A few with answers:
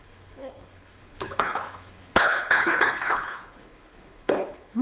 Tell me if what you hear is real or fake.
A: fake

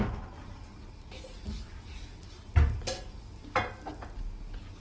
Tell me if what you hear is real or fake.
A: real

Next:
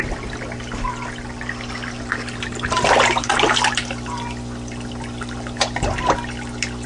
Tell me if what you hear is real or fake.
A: real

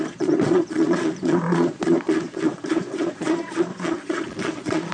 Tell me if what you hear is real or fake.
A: fake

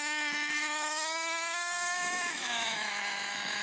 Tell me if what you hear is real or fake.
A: fake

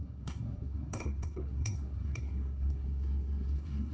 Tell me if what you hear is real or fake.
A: fake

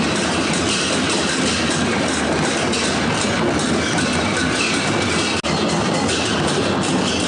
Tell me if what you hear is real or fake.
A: real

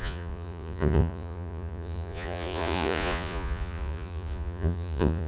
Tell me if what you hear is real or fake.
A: fake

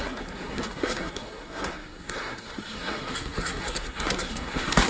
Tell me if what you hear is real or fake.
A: fake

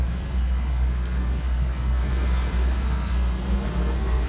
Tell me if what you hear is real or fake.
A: fake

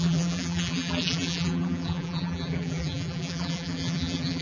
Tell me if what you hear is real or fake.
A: fake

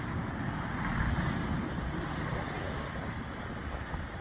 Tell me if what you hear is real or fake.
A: real